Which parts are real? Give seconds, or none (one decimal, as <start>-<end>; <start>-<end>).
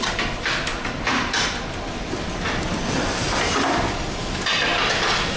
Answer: 0.0-5.4